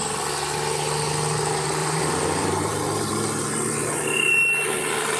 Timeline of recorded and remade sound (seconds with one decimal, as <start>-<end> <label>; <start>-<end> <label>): 0.0-1.8 recorded; 1.8-3.5 remade; 3.5-5.2 recorded